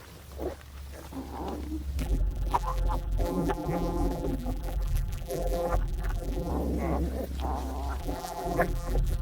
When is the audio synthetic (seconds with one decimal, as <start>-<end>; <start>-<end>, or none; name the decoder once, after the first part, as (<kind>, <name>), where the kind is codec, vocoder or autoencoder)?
2.0-6.5 (vocoder, BigVGAN v2); 8.0-9.2